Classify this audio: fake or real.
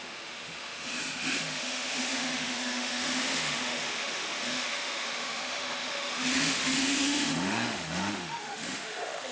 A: fake